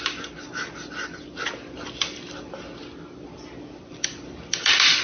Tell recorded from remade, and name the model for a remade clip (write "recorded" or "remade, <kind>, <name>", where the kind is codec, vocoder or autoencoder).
recorded